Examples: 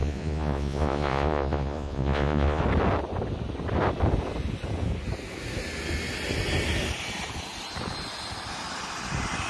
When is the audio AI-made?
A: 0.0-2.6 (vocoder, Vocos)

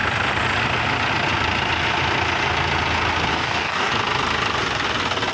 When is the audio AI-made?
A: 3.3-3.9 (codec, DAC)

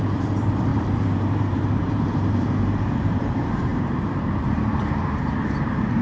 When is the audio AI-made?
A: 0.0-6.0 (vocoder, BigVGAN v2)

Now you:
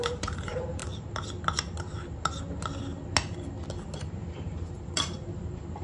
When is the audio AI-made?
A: 0.0-0.8 (vocoder, BigVGAN v2); 4.3-5.8

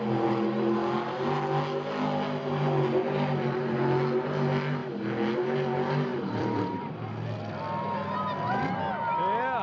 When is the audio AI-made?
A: 6.1-6.9 (vocoder, BigVGAN v2)

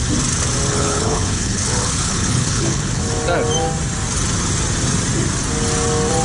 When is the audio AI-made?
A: 0.7-3.0 (codec, HILCodec)

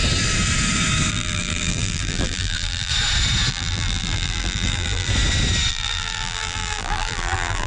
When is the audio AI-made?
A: 1.1-2.9 (vocoder, BigVGAN v2); 3.5-5.1; 5.7-7.7